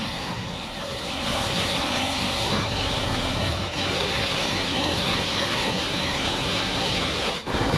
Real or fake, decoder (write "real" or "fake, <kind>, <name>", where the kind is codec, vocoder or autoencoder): fake, codec, SNAC